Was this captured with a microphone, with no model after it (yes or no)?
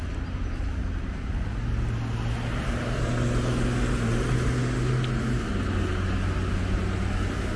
yes